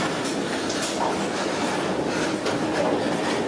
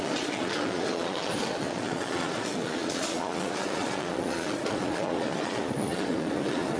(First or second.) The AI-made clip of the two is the second